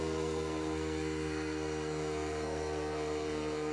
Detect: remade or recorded remade